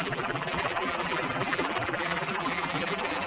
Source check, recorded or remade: remade